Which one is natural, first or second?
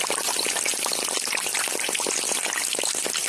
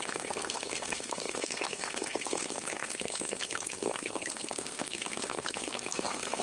first